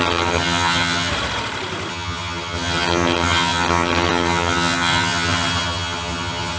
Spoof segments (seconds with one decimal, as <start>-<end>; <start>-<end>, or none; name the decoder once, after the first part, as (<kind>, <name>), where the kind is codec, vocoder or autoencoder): 0.0-1.1 (vocoder, HiFi-GAN); 1.9-6.6